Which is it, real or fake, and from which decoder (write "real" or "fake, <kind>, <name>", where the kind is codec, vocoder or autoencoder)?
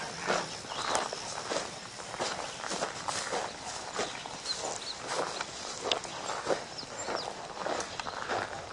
real